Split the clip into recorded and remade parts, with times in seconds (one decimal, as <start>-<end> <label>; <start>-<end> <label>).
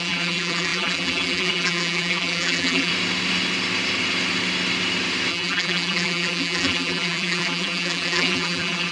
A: 0.0-2.9 remade; 2.9-5.3 recorded; 5.3-8.9 remade